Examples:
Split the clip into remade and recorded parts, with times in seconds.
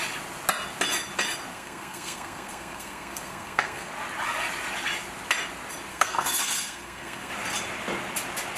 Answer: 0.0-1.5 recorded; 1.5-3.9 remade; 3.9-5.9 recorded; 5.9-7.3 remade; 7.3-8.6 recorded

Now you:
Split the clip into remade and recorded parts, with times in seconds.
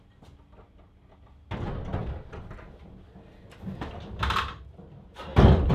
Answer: 0.0-5.7 recorded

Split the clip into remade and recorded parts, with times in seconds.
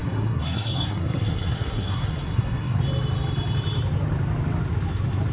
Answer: 0.0-2.8 remade; 2.8-5.3 recorded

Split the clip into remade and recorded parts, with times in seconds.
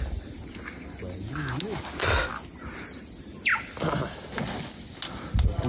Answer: 0.0-5.7 recorded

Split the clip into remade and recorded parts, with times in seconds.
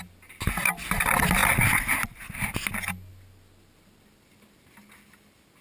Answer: 0.0-5.6 recorded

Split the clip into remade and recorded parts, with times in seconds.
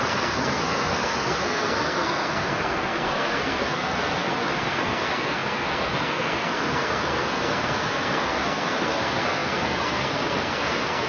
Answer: 0.0-11.1 remade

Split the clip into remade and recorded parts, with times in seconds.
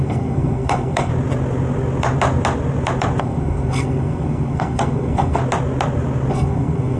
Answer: 0.0-1.1 remade; 1.1-3.2 recorded; 3.2-5.4 remade; 5.4-6.3 recorded; 6.3-7.0 remade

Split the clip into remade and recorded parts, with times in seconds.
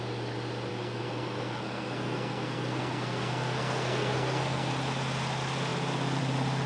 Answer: 0.0-0.7 recorded; 0.7-4.7 remade; 4.7-6.7 recorded